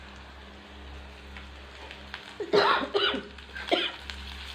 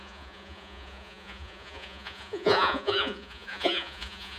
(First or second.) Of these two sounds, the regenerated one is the second